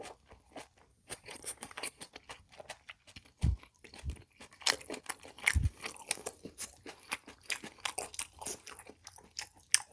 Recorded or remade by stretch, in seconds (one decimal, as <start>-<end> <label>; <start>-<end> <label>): 0.0-0.9 recorded; 0.9-2.1 remade; 2.1-9.9 recorded